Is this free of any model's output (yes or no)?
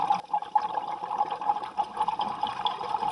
yes